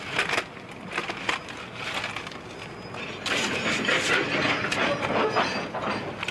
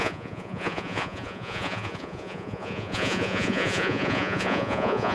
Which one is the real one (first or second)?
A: first